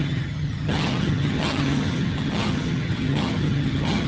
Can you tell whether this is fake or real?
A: fake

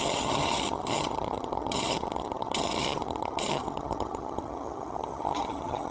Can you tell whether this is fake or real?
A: fake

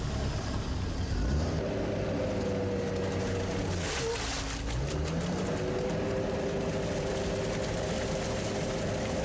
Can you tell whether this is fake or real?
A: real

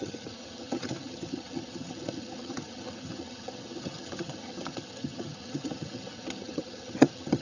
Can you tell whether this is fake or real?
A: fake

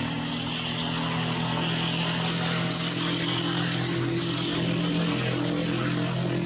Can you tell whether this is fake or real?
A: real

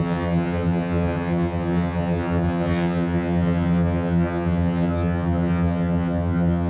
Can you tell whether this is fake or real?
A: fake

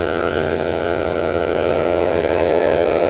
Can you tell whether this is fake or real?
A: fake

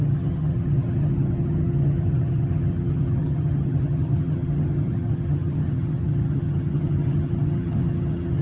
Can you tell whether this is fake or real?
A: fake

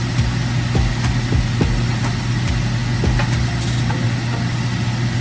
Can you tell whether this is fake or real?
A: real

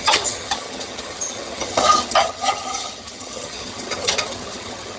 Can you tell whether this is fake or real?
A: fake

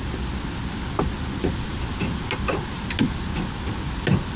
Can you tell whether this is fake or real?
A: real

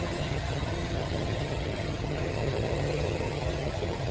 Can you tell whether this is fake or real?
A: fake